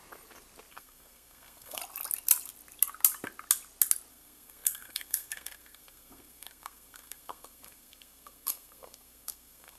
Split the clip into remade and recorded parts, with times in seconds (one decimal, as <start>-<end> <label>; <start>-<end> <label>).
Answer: 0.0-0.7 recorded; 0.7-1.8 remade; 1.8-4.1 recorded; 4.1-9.8 remade